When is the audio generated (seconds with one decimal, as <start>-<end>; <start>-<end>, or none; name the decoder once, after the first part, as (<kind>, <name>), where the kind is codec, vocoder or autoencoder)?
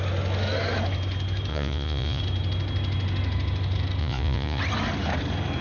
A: 1.5-2.2 (vocoder, Vocos); 4.0-4.6